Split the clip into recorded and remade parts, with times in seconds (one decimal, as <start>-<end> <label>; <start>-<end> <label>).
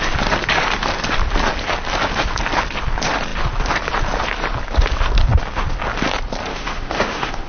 0.0-6.5 recorded; 6.5-7.5 remade